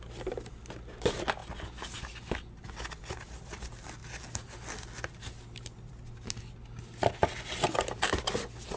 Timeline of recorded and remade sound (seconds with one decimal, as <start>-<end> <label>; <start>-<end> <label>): 0.0-8.8 recorded